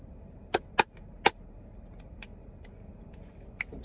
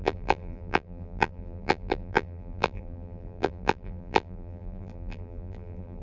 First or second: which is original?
first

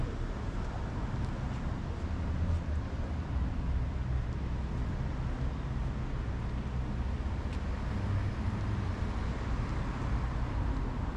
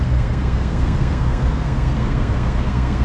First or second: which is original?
first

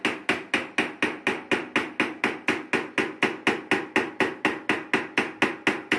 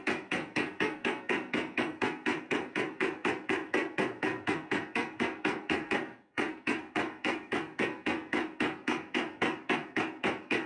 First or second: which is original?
first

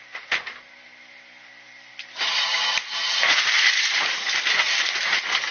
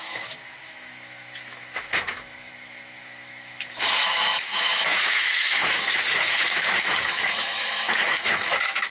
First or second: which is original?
first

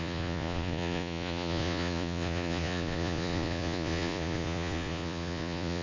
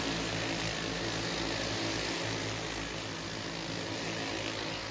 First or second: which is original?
second